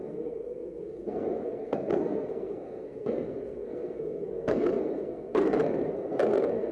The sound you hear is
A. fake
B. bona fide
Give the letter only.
A